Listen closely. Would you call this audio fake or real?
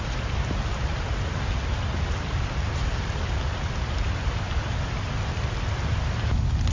real